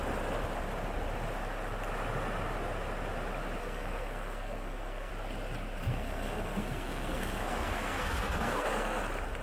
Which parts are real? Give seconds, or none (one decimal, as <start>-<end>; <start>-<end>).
0.0-3.6; 5.1-5.8; 9.0-9.4